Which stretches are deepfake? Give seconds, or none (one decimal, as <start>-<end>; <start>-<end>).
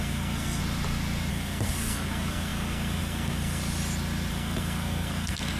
0.0-0.6; 1.3-3.6; 4.3-5.6